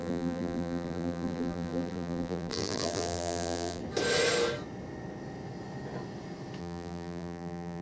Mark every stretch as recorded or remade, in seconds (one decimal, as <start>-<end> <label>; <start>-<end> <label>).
0.0-3.8 remade; 3.8-6.6 recorded; 6.6-7.8 remade